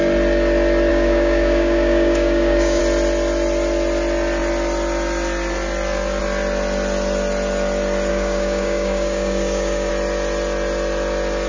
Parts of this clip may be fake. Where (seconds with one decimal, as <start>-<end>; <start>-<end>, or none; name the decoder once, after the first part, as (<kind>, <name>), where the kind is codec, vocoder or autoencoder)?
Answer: 0.9-2.8 (codec, DAC); 8.1-9.9